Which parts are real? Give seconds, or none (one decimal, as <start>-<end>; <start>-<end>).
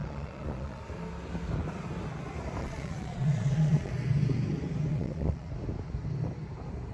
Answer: 0.8-2.6; 3.9-4.9; 5.5-6.9